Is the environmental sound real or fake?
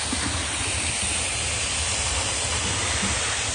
real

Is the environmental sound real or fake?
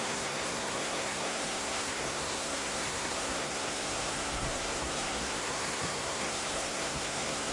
fake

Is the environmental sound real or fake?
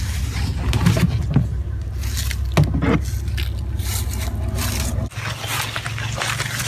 real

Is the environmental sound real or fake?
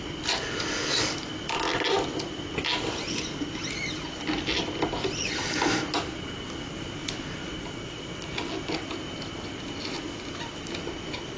real